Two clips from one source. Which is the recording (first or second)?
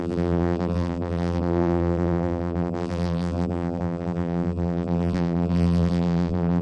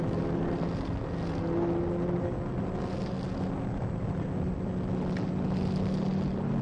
second